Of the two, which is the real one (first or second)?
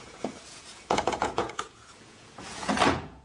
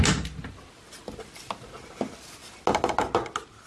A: second